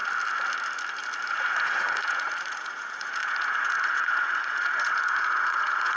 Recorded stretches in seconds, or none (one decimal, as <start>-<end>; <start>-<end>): 0.0-1.3